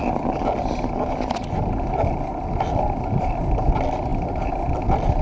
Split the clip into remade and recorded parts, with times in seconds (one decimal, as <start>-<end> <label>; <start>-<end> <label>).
0.0-5.2 recorded